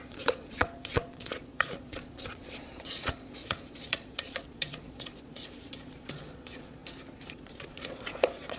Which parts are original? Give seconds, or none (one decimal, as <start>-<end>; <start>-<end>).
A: 6.8-7.3